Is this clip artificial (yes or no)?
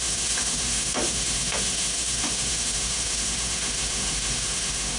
yes